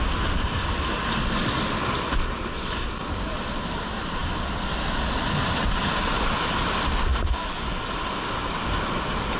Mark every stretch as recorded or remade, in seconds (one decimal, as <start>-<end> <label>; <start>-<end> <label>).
0.0-9.4 recorded